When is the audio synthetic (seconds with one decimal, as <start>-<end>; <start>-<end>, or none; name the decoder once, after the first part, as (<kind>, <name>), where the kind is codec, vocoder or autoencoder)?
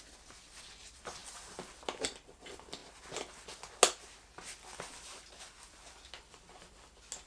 none